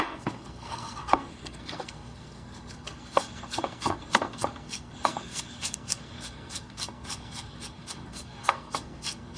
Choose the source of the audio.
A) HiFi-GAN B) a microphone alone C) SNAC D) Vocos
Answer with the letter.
C